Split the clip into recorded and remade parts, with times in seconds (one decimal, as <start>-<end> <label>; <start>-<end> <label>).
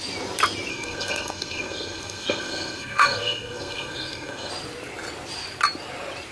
0.0-0.7 recorded; 0.7-4.5 remade; 4.5-6.3 recorded